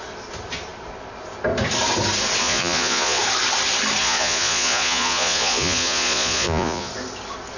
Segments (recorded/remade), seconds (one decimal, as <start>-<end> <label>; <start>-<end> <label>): 0.0-2.4 recorded; 2.4-3.2 remade; 3.2-4.0 recorded; 4.0-6.9 remade; 6.9-7.6 recorded